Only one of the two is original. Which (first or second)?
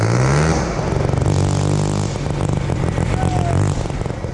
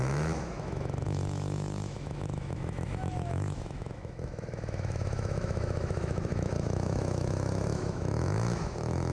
first